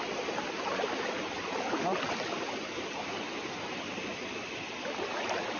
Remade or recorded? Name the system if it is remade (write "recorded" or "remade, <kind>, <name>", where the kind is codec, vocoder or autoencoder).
recorded